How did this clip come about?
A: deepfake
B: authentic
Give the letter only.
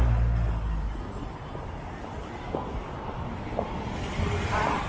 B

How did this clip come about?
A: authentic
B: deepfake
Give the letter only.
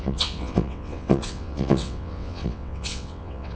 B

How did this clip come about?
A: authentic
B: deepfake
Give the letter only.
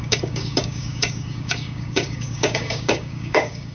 B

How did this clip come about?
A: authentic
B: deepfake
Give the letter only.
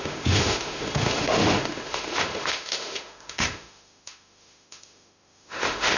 B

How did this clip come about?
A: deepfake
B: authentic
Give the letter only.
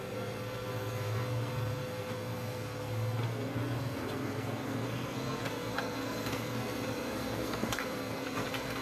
A